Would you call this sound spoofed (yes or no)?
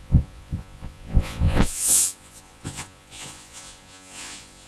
yes